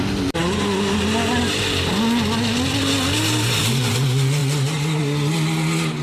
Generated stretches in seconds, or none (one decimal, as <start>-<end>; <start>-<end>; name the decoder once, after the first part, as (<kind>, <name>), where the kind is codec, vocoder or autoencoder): none